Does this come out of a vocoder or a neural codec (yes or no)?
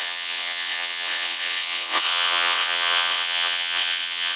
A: yes